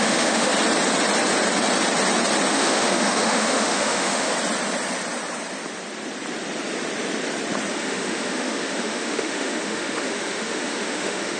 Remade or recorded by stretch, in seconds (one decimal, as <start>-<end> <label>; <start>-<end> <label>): 0.0-0.5 remade; 0.5-2.5 recorded; 2.5-4.3 remade; 4.3-7.7 recorded; 7.7-11.4 remade